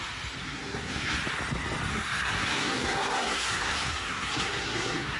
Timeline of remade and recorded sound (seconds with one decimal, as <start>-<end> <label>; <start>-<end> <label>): 0.0-0.4 recorded; 0.4-1.2 remade; 1.2-1.9 recorded; 1.9-5.2 remade